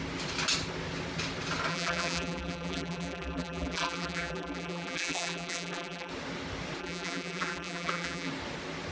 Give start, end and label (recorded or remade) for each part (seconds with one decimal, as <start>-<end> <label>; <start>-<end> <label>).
0.0-1.7 recorded; 1.7-6.1 remade; 6.1-6.8 recorded; 6.8-8.3 remade; 8.3-8.9 recorded